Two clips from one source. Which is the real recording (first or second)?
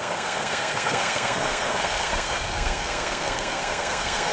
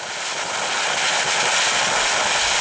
second